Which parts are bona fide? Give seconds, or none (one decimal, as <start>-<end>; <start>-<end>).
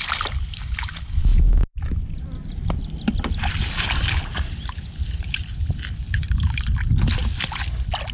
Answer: 0.0-8.1